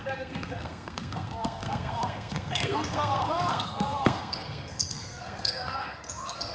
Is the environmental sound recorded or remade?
remade